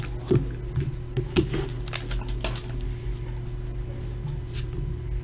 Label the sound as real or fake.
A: real